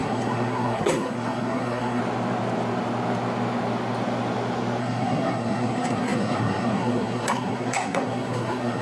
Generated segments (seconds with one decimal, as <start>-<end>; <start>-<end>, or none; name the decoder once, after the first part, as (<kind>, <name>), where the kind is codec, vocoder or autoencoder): 0.0-2.0 (codec, SNAC); 4.8-8.8